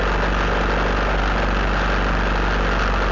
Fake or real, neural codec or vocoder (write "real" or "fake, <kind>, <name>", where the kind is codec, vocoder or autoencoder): real